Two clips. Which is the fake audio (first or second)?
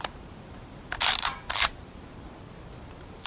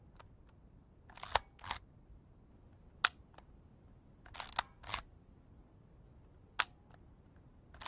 first